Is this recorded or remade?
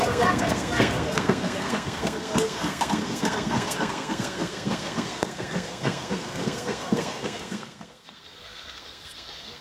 remade